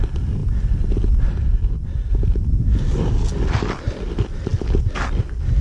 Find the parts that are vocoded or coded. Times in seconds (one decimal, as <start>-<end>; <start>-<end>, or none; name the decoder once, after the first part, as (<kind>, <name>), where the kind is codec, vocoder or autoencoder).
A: none